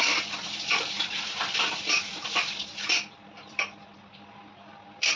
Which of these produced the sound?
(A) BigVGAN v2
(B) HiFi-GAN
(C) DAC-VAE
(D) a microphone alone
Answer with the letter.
A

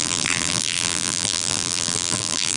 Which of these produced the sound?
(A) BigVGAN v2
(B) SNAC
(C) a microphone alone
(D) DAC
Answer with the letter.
A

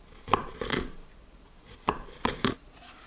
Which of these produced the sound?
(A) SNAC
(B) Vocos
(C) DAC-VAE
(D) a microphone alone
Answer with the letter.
B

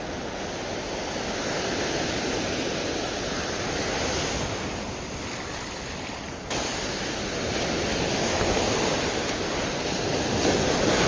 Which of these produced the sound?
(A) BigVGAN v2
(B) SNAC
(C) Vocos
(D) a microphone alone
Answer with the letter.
D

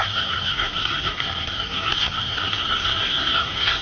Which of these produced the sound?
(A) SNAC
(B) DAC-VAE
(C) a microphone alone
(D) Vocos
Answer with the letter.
A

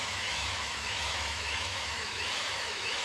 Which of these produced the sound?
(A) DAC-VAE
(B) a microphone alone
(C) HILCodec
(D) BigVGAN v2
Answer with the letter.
A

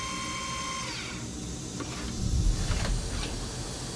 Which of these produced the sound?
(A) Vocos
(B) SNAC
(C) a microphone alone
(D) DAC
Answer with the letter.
C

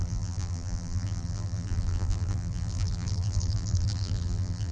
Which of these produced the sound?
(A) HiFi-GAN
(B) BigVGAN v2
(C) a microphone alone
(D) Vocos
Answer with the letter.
B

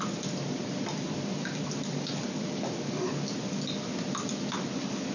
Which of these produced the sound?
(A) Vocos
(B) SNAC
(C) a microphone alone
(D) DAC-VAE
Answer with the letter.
C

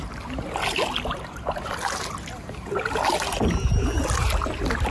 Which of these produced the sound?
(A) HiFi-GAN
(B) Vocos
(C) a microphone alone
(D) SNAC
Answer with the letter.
C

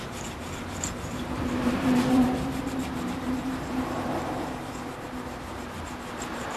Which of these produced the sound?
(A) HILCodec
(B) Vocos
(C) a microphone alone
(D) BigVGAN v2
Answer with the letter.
D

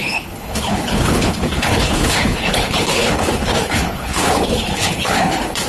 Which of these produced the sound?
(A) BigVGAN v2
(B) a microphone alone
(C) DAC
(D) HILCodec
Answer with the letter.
D